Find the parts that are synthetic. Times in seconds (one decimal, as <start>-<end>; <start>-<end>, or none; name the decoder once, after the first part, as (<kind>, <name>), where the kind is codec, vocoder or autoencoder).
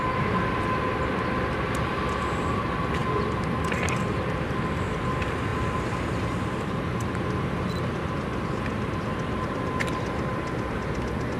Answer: none